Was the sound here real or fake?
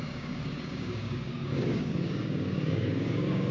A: fake